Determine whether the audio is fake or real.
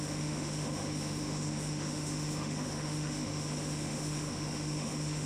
fake